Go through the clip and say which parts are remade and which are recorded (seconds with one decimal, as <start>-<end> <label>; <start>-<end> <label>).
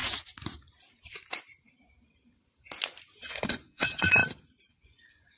0.0-3.2 recorded; 3.2-4.2 remade; 4.2-4.7 recorded; 4.7-5.4 remade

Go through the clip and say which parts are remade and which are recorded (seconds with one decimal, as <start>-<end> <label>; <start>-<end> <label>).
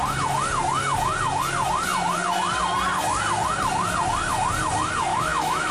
0.0-5.1 recorded; 5.1-5.7 remade